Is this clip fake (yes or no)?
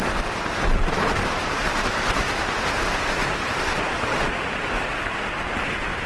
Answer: no